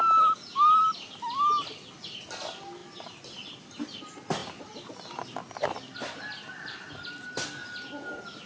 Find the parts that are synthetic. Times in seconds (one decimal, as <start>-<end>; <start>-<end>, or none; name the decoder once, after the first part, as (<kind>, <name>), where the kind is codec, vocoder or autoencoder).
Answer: none